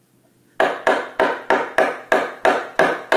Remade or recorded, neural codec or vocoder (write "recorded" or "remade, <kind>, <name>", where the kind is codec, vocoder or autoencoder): recorded